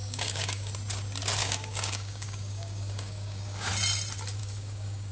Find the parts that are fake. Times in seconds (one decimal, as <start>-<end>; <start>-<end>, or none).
0.0-0.7; 1.4-3.7; 4.4-5.1